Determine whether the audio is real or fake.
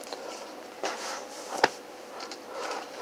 fake